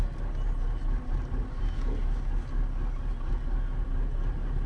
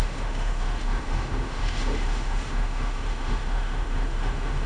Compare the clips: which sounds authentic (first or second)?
first